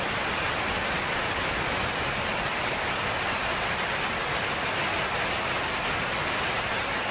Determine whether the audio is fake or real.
real